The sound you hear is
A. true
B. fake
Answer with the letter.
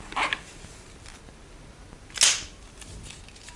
A